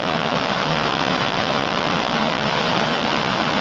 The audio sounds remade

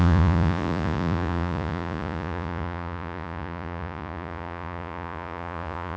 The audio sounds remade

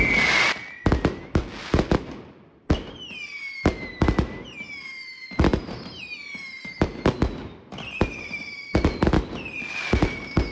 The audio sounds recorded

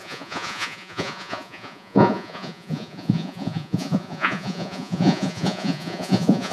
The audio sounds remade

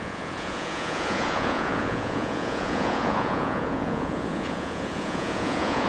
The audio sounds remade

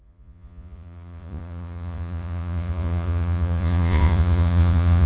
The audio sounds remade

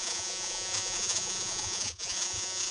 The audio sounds remade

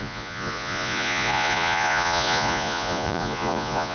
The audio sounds remade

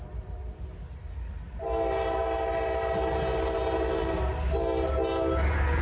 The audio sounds recorded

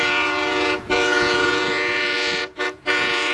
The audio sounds remade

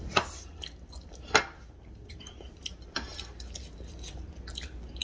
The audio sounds recorded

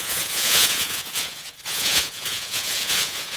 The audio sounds remade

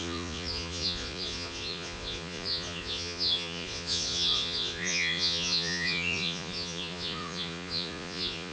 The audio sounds remade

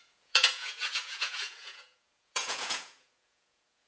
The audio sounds remade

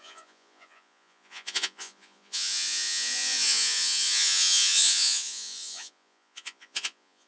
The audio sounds remade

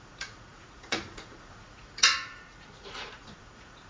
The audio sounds remade